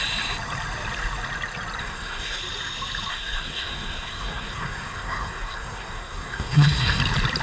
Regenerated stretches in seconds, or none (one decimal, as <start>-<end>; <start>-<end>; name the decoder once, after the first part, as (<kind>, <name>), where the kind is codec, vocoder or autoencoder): 1.8-2.4 (codec, SNAC); 3.1-7.0